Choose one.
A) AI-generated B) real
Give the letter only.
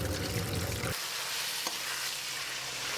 B